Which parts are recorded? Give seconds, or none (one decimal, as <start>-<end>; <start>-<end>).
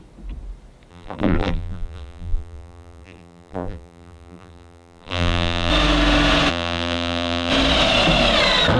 0.0-0.9; 5.7-6.5; 7.5-8.8